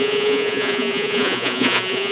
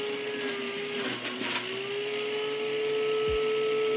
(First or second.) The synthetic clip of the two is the first